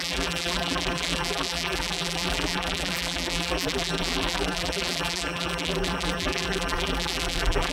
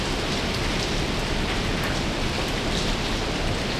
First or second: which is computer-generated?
first